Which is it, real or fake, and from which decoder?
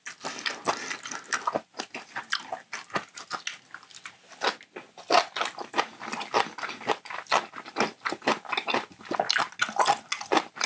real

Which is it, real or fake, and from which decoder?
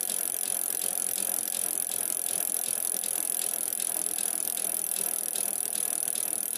real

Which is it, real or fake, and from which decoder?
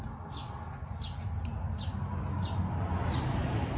real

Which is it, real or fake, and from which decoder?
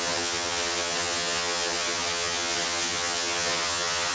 fake, vocoder, HiFi-GAN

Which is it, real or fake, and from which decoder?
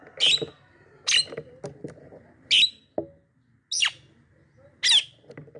real